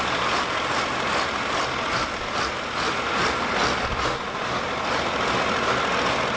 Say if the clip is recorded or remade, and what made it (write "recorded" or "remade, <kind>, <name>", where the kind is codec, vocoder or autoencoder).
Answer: recorded